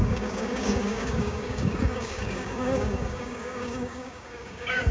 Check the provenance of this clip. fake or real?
fake